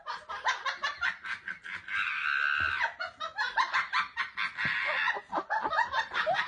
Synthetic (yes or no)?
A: no